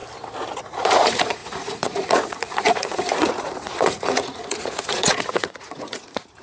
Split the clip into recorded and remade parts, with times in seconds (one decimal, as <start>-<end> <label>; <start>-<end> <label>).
0.0-0.6 recorded; 0.6-6.4 remade